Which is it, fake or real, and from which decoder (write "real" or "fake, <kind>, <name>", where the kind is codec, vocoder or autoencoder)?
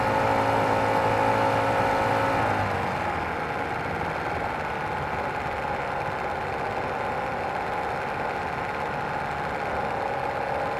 real